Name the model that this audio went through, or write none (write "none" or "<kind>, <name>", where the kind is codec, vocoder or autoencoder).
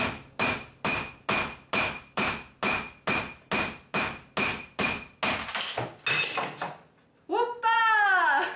none